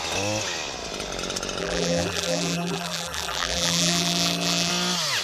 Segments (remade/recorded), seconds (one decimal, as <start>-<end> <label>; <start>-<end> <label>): 0.0-1.6 recorded; 1.6-4.7 remade; 4.7-5.2 recorded